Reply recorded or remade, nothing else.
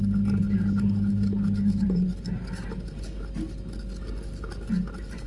recorded